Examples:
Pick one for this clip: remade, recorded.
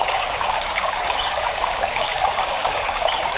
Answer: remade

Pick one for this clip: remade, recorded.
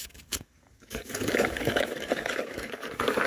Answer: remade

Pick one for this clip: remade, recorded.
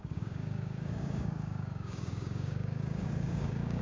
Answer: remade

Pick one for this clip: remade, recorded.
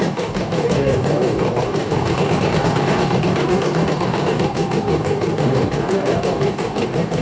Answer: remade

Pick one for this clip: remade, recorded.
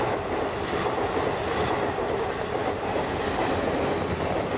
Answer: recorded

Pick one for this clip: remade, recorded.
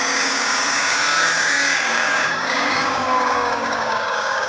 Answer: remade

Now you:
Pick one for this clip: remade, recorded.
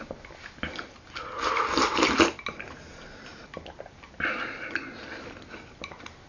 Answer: recorded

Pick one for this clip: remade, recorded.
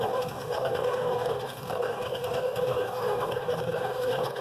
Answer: remade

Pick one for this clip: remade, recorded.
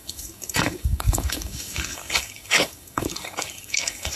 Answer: remade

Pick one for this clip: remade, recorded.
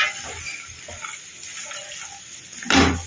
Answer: recorded